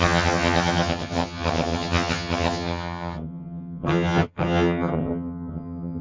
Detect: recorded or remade remade